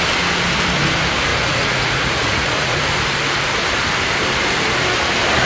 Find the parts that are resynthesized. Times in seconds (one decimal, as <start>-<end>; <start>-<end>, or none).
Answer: 1.3-2.8